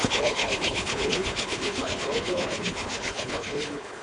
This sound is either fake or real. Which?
fake